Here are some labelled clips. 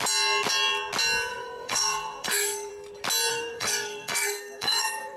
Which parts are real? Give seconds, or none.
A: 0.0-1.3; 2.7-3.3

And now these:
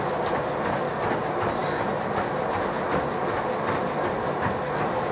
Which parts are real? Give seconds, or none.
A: 0.0-5.1

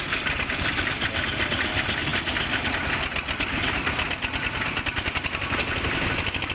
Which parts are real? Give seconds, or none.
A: 0.0-6.5

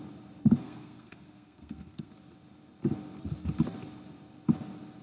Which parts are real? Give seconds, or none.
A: 0.0-0.6; 2.1-5.0

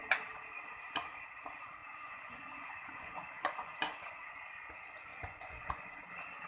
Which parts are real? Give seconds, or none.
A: 0.0-1.8; 4.4-5.1; 6.0-6.5

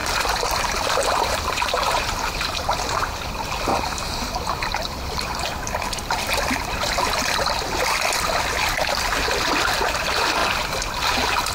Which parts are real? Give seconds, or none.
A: 2.8-11.5